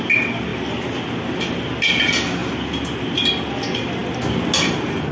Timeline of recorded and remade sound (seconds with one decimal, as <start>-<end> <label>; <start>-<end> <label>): 0.0-5.1 recorded